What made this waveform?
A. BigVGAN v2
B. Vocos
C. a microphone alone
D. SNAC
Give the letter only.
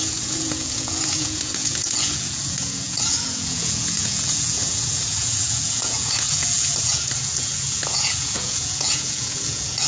B